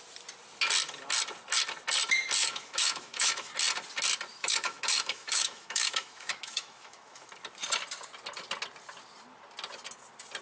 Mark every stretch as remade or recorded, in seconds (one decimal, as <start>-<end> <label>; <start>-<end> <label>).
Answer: 0.0-2.4 recorded; 2.4-3.5 remade; 3.5-4.3 recorded; 4.3-7.3 remade; 7.3-10.4 recorded